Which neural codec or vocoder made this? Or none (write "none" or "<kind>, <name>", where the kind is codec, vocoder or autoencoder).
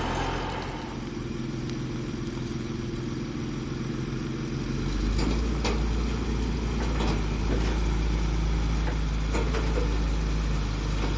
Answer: none